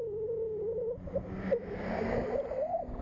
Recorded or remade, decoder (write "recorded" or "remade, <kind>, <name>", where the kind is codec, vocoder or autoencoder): recorded